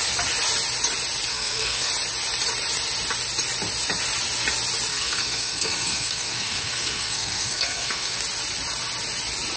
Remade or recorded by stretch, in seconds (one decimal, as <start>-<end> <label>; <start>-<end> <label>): 0.0-1.3 recorded; 1.3-1.9 remade; 1.9-4.9 recorded; 4.9-8.2 remade; 8.2-9.6 recorded